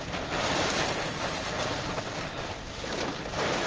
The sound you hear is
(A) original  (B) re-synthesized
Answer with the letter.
B